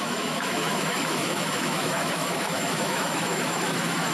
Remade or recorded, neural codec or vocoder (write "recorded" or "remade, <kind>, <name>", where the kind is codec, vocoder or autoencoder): remade, autoencoder, DAC-VAE